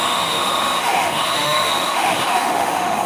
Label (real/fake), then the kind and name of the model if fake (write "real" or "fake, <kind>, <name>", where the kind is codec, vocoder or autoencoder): fake, autoencoder, DAC-VAE